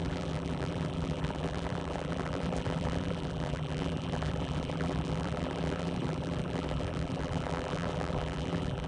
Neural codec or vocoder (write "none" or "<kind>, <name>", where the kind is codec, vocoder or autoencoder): vocoder, BigVGAN v2